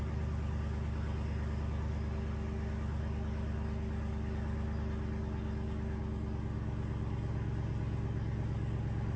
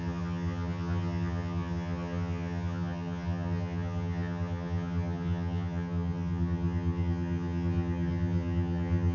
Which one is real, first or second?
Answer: first